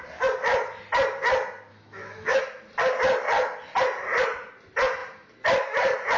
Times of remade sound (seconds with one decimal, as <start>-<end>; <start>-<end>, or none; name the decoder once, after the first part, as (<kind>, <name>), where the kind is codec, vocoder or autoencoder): 1.7-2.4 (autoencoder, DAC-VAE)